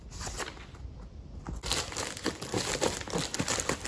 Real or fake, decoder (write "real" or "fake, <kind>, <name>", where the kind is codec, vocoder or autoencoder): real